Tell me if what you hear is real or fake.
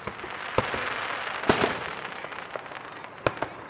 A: real